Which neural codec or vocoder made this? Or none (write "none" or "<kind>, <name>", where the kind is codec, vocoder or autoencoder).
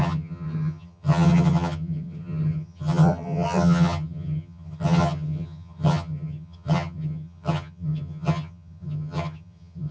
vocoder, HiFi-GAN